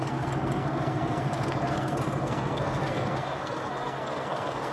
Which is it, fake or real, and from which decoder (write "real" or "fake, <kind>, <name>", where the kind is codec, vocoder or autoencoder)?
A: fake, codec, SNAC